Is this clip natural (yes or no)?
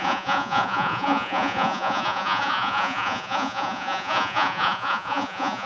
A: no